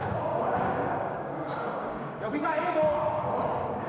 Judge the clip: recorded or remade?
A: remade